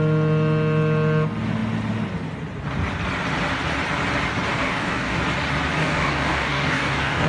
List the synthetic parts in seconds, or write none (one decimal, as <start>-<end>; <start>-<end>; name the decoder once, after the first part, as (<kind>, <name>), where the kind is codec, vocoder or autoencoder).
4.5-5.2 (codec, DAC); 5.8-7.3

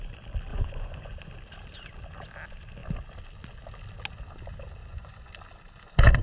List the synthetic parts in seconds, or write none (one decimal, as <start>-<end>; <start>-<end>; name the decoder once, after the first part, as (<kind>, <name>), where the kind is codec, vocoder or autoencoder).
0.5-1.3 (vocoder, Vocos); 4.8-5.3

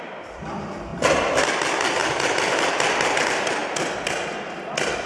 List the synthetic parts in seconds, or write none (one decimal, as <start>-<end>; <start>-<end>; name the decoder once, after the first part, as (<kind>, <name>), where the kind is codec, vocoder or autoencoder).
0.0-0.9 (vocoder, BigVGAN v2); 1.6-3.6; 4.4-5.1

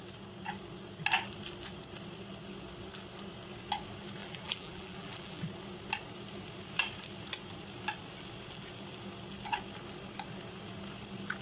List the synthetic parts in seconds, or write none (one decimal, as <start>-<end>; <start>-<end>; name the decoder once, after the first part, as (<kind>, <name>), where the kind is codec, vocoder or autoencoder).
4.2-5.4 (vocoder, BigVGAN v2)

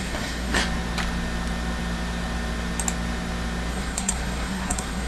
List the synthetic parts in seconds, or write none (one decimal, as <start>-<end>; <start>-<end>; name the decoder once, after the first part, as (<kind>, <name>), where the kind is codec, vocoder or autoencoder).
0.0-0.6 (codec, SNAC); 3.7-5.1